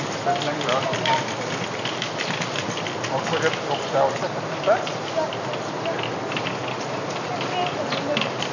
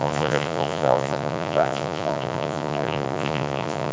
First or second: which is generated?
second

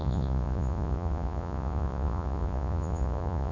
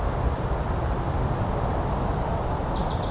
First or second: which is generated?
first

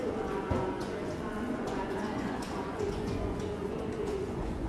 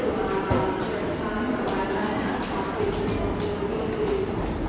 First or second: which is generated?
first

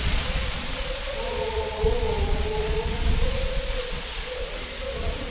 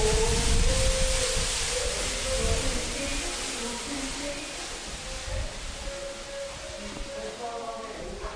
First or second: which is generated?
first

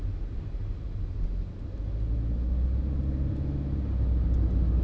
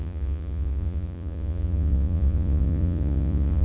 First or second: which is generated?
second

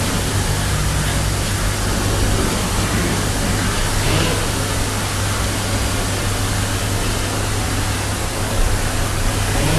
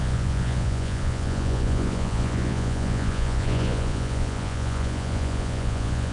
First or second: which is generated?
second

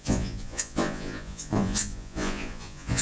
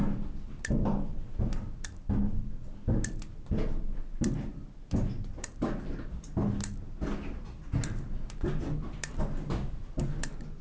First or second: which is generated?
first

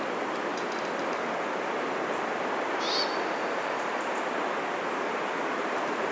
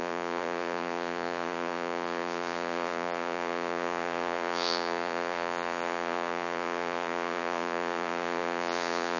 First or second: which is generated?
second